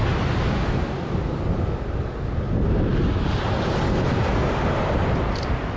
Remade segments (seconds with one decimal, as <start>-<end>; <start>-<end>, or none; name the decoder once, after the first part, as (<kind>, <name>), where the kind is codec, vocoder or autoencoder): none